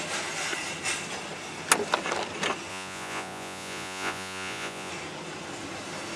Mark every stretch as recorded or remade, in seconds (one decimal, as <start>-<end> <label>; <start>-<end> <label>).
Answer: 0.0-2.7 recorded; 2.7-4.9 remade; 4.9-6.2 recorded